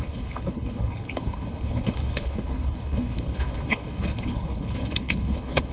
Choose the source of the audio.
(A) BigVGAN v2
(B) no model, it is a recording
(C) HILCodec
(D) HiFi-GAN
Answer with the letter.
C